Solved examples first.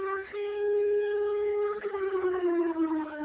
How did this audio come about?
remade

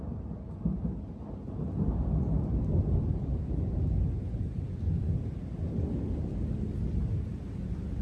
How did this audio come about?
recorded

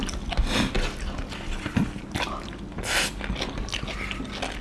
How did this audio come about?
recorded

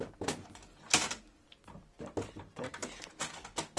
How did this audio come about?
recorded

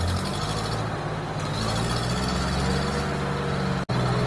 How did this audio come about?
recorded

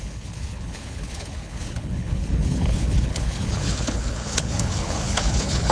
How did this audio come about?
remade